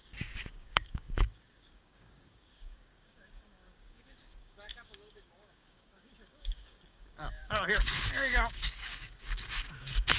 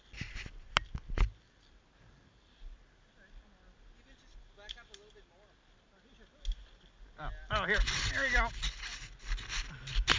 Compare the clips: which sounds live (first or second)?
second